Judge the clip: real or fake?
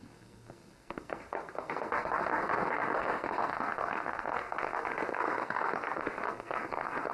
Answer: fake